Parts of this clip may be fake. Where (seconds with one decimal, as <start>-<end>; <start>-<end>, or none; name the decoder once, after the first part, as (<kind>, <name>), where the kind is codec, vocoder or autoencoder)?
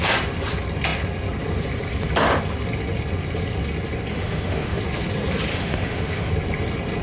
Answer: 4.1-4.8 (autoencoder, DAC-VAE); 5.5-6.3